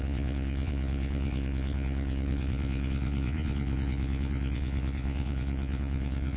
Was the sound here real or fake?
fake